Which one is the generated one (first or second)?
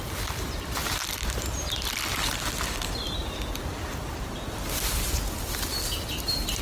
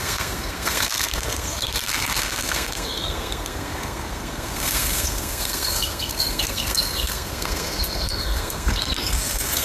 second